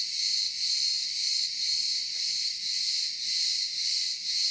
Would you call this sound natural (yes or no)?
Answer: yes